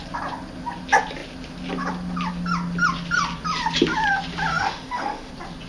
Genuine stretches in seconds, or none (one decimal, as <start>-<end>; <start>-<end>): 0.0-4.5; 5.3-5.7

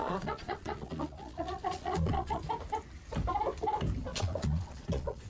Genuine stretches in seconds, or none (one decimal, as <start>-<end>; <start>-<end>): 2.4-4.1

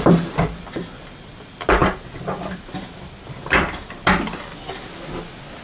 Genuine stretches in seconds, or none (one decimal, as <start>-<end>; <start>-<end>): 0.0-5.6